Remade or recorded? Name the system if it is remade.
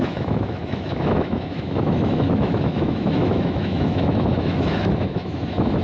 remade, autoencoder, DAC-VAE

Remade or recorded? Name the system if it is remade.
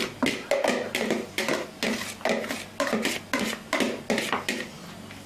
recorded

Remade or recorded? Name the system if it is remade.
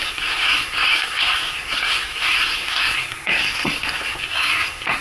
remade, codec, SNAC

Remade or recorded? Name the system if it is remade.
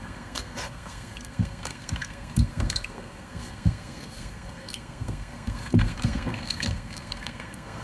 remade, codec, SNAC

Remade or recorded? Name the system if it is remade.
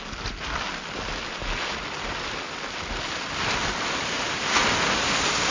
recorded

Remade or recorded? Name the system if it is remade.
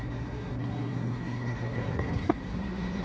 remade, codec, SNAC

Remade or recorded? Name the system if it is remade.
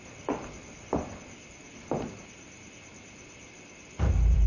recorded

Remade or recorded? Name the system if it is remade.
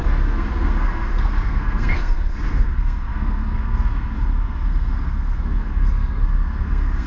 remade, codec, SNAC